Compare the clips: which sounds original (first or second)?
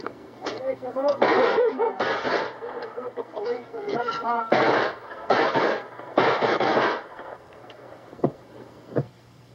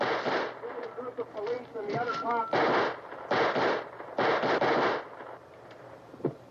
second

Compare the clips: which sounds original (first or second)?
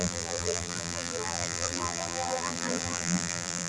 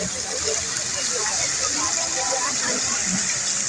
second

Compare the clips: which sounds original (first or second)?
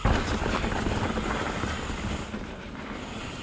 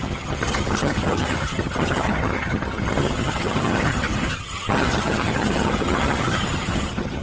first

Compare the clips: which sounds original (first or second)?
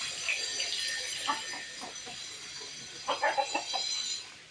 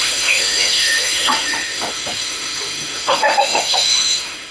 first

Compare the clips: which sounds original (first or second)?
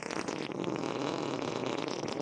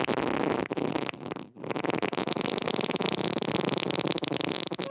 second